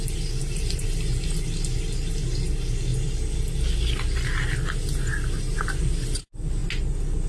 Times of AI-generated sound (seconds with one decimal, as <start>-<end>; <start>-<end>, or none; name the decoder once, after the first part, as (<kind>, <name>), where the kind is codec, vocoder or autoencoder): none